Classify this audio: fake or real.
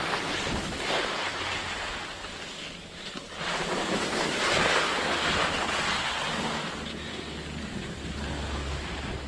real